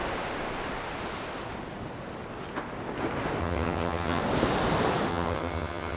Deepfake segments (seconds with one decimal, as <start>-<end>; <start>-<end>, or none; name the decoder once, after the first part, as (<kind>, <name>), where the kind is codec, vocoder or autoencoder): 3.4-4.2 (vocoder, HiFi-GAN); 5.1-6.0